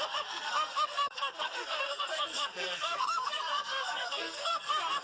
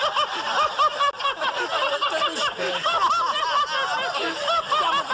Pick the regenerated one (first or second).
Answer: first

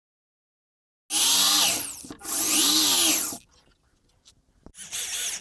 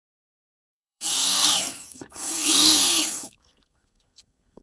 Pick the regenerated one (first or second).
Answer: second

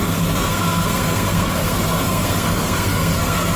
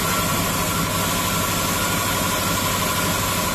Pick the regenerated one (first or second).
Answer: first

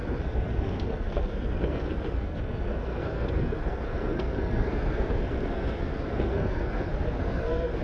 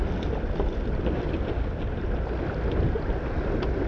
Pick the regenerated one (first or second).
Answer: first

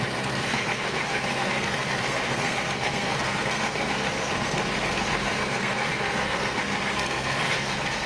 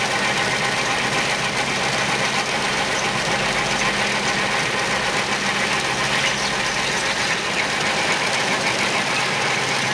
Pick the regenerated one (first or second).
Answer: first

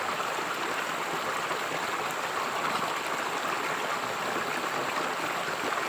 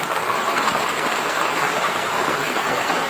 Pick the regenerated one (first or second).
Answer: second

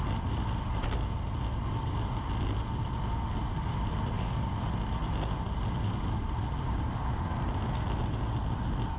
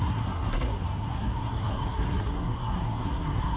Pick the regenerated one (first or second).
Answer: second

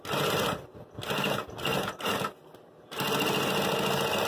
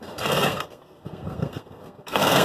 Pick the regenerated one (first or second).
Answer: second